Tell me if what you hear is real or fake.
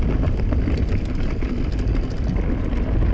real